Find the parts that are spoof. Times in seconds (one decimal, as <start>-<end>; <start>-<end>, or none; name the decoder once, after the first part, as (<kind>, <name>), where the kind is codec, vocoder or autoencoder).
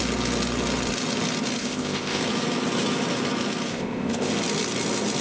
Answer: 1.6-2.2 (codec, ZipCodec); 3.7-4.3